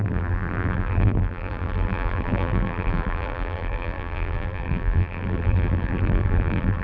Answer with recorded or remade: remade